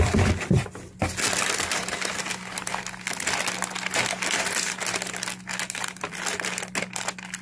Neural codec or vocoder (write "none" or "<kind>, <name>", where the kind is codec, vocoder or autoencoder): none